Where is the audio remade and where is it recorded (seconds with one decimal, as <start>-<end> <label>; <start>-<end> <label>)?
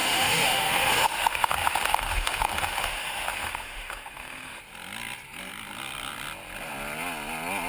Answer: 0.0-4.6 remade; 4.6-7.7 recorded